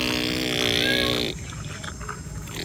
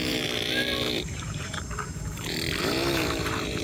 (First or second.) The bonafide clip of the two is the first